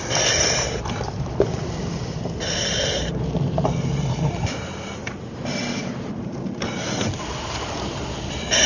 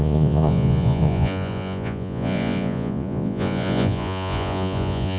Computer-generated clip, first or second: second